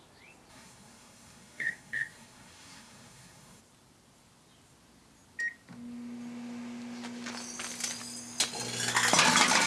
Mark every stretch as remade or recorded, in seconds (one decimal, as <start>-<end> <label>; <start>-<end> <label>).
0.0-0.5 recorded; 0.5-3.6 remade; 3.6-9.7 recorded